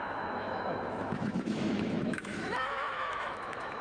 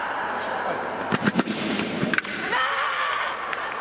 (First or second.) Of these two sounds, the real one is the second